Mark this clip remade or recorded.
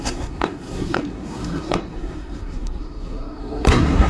remade